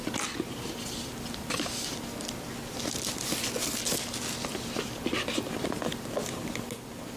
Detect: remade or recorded recorded